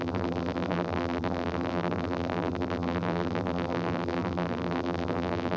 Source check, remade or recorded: remade